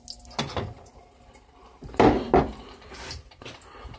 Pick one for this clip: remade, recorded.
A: recorded